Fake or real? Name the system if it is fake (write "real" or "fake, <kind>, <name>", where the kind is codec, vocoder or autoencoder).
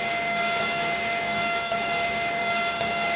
fake, codec, DAC